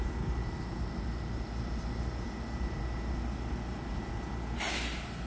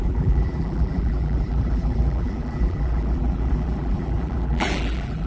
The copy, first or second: second